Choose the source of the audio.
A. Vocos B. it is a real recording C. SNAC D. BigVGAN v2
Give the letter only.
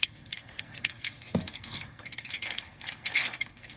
C